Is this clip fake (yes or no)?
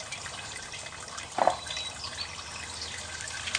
no